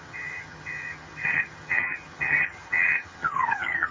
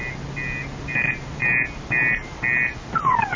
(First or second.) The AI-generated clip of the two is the first